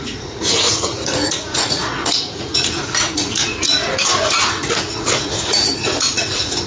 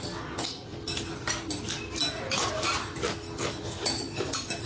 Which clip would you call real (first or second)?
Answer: second